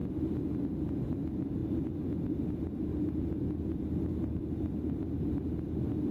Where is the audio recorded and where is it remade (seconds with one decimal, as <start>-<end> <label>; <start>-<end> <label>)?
0.0-0.6 recorded; 0.6-6.1 remade